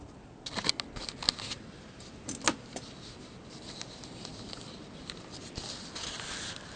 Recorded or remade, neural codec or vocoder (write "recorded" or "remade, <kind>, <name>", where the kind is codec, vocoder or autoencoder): recorded